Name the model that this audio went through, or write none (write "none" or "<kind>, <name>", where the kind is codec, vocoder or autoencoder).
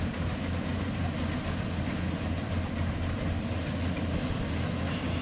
none